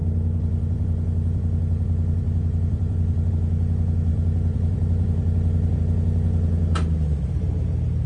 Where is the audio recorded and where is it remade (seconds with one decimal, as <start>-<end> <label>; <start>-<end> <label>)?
0.0-3.3 remade; 3.3-4.1 recorded; 4.1-5.8 remade; 5.8-8.1 recorded